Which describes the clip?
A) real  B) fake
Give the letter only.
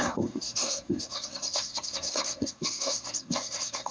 B